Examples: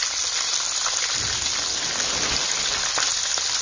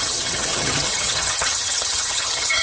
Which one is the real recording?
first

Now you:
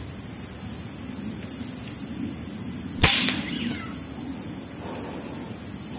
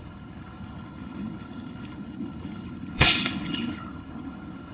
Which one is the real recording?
first